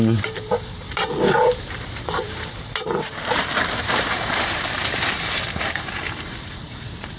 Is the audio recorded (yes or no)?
no